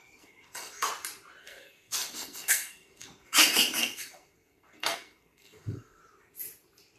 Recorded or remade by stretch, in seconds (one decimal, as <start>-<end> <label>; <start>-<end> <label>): 0.0-0.9 remade; 0.9-1.4 recorded; 1.4-6.0 remade; 6.0-7.0 recorded